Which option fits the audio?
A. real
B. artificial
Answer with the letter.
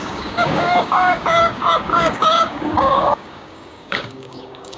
B